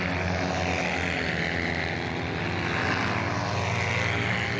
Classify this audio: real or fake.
real